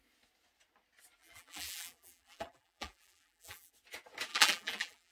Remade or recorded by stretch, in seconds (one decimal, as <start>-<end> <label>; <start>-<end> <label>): 0.0-1.2 recorded; 1.2-3.7 remade; 3.7-4.3 recorded; 4.3-5.1 remade